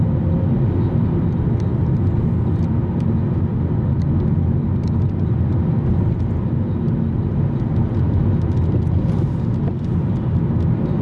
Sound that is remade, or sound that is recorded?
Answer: recorded